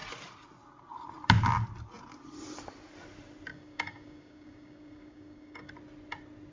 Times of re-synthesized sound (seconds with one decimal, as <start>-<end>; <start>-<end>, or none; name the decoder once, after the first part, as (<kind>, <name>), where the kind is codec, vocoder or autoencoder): 3.5-5.7 (codec, DAC)